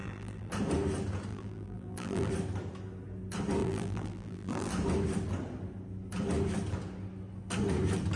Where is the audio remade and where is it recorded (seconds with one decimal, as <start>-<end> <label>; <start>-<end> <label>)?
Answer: 0.0-0.5 remade; 0.5-1.3 recorded; 1.3-2.3 remade; 2.3-3.6 recorded; 3.6-4.7 remade; 4.7-8.2 recorded